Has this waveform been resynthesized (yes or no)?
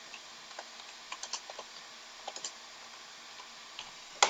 no